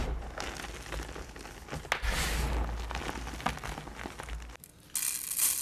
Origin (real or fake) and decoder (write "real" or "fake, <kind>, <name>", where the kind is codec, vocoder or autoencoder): real